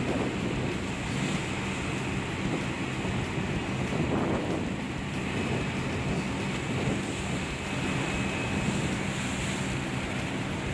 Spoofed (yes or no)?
no